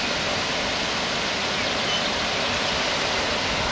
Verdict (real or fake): real